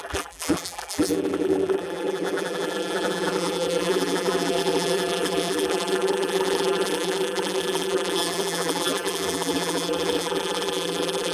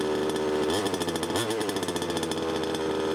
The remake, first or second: first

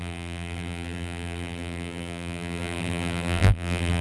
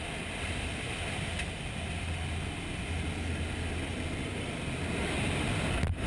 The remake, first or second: first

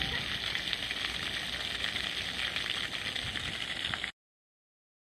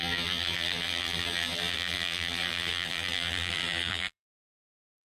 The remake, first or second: second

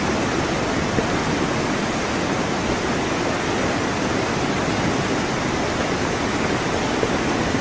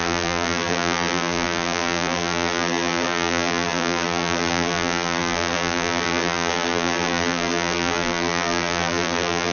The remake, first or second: second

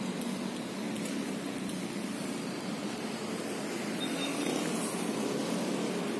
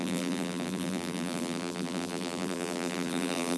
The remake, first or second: second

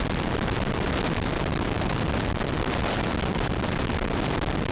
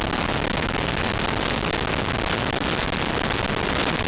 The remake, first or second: first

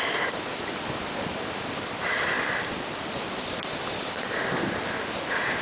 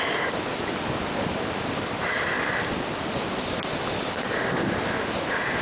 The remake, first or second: first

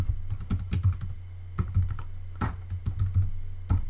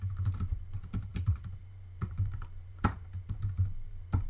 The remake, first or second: second